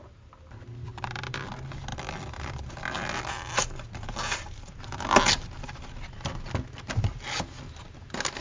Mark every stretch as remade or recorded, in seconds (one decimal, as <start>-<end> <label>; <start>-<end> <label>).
0.0-0.9 recorded; 0.9-1.4 remade; 1.4-1.9 recorded; 1.9-2.7 remade; 2.7-8.4 recorded